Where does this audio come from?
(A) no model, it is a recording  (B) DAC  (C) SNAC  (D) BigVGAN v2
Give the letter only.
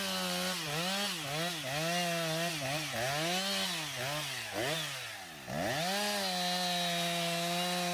A